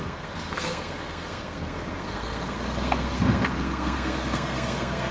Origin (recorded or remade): remade